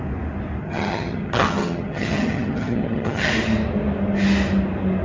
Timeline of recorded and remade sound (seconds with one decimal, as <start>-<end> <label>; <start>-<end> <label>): 0.0-0.6 recorded; 0.6-3.3 remade; 3.3-5.0 recorded